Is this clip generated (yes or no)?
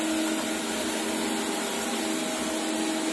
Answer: no